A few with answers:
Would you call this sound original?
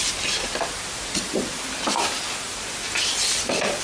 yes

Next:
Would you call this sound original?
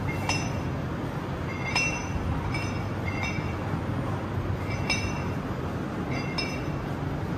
yes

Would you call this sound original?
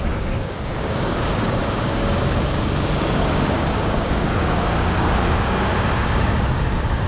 no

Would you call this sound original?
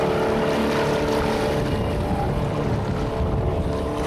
yes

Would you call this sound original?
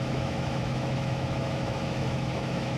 no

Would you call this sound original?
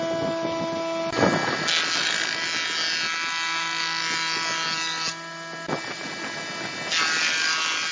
yes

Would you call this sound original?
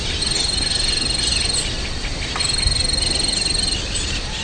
yes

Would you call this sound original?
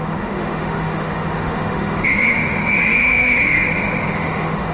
no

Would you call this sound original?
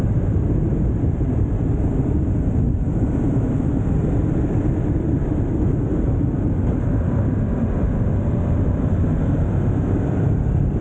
yes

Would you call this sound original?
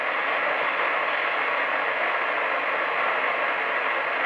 yes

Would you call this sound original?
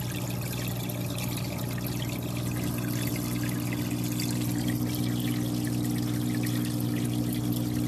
yes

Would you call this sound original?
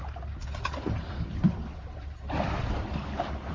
yes